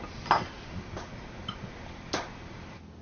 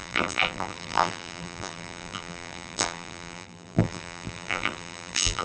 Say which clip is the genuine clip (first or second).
first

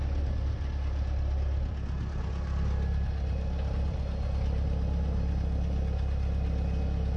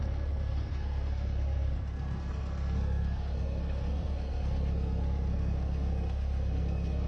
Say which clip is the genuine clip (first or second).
first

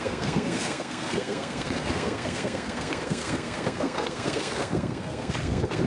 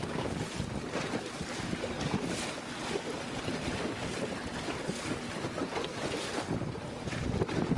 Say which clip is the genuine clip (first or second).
second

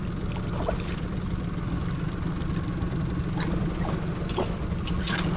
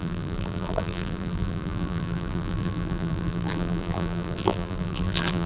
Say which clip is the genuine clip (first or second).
first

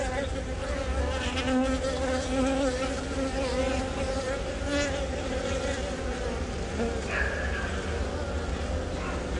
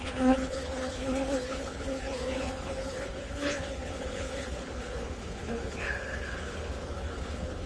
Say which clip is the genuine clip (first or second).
first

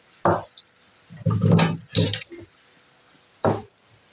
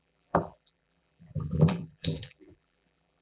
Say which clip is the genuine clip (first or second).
first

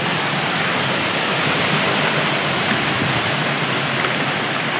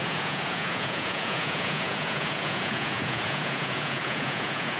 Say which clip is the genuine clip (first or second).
first